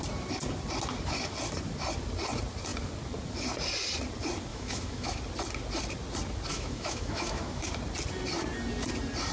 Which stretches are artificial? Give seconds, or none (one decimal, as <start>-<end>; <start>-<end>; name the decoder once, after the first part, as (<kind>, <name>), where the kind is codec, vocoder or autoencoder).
4.5-5.2 (autoencoder, DAC-VAE); 6.5-7.7